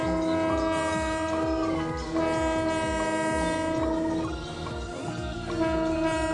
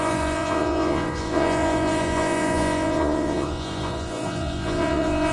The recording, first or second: first